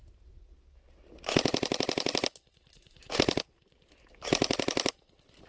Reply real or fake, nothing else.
real